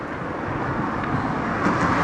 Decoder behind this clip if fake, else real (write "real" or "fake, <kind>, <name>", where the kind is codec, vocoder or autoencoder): real